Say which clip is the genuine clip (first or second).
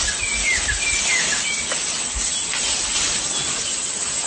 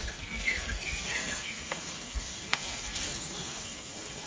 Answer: first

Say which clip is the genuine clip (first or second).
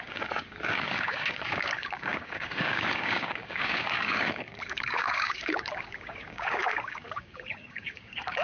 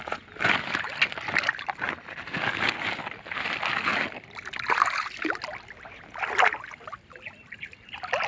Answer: second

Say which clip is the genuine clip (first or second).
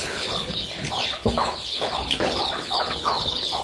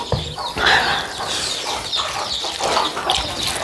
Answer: second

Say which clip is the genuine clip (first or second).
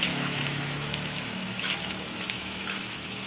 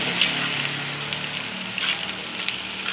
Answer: second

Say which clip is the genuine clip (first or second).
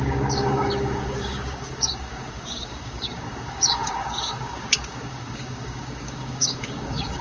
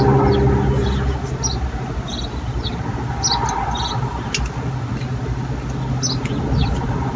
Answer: second